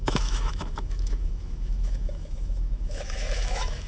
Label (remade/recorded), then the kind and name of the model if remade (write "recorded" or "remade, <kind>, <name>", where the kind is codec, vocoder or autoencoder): remade, autoencoder, DAC-VAE